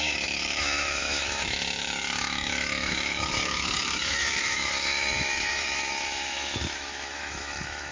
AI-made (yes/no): yes